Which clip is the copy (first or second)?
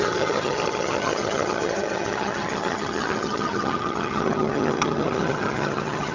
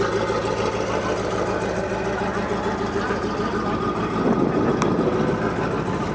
first